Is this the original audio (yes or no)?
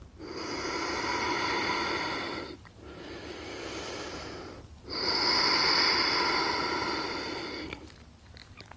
yes